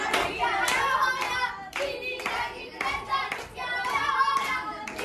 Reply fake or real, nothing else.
real